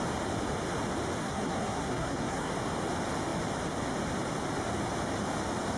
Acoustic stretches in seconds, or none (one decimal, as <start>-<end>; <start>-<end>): 0.0-1.2; 2.5-5.8